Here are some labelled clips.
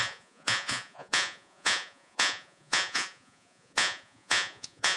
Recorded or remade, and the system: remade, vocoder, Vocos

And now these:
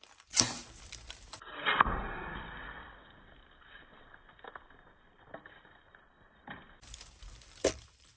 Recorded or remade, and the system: remade, vocoder, BigVGAN v2